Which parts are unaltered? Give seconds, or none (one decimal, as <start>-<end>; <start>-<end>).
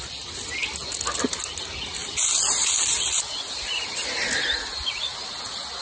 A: 0.0-2.0; 3.3-5.8